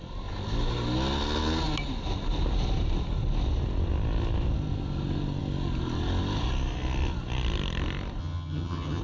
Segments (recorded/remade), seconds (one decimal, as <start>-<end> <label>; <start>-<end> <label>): 0.0-8.2 recorded; 8.2-9.0 remade